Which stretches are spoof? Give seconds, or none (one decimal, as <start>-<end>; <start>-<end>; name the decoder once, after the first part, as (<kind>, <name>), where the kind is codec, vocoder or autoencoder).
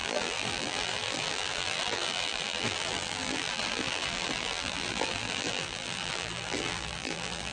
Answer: 0.0-7.5 (vocoder, BigVGAN v2)